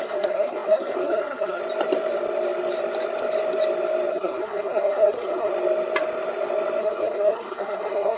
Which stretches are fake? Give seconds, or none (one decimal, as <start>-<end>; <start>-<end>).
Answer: 0.0-1.6; 4.1-5.5; 6.8-8.2